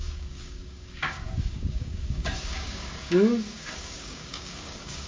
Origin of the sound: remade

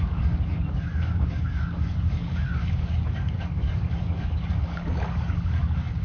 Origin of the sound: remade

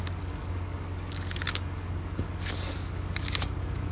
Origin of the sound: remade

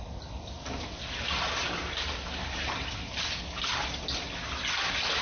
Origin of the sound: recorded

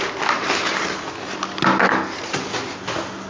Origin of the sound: recorded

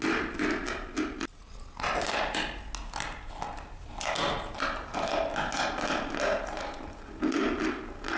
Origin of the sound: recorded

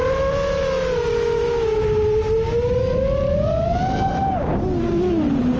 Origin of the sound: recorded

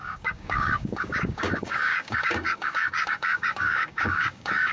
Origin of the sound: remade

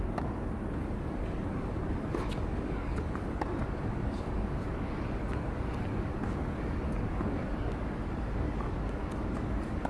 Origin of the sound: remade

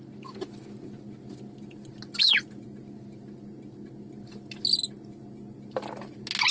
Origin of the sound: recorded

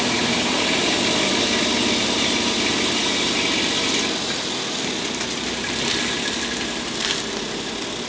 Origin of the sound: recorded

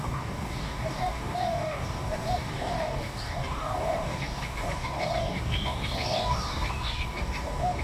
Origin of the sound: remade